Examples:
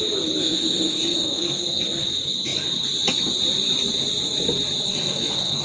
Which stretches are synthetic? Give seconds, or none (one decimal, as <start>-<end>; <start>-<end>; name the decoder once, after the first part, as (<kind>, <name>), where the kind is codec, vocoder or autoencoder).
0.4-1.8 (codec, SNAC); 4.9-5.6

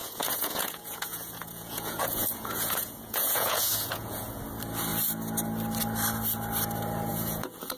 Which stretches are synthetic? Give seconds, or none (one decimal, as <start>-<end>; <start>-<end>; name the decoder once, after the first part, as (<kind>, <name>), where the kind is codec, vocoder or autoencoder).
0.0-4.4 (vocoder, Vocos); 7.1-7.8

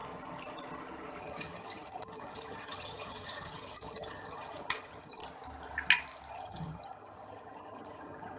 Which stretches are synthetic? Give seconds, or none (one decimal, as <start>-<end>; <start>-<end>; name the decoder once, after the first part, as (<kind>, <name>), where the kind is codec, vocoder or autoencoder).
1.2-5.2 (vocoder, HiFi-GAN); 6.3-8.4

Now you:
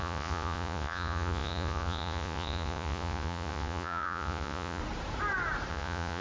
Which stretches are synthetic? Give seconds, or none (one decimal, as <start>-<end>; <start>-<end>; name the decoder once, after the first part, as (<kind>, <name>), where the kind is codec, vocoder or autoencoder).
0.0-4.8 (vocoder, Vocos); 5.7-6.2